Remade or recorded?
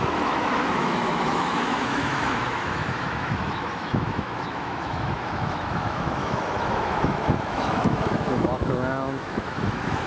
remade